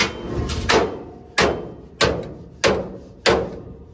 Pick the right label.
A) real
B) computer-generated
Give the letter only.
A